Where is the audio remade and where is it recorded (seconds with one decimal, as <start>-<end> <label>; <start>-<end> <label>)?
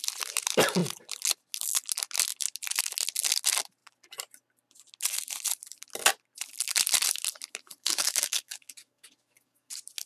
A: 0.0-7.7 recorded; 7.7-9.7 remade; 9.7-10.1 recorded